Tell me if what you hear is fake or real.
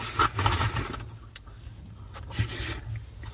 real